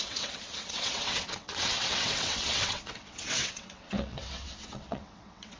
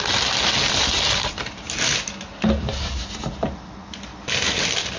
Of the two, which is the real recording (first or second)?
second